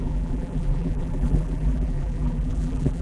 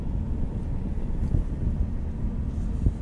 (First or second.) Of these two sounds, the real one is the second